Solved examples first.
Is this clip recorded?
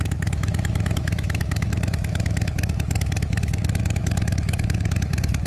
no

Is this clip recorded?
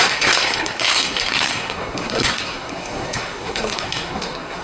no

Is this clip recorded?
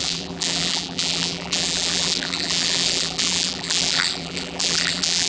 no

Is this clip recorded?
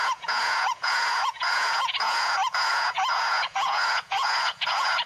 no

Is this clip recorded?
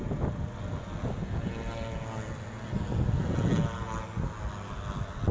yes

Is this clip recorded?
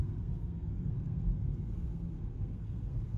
no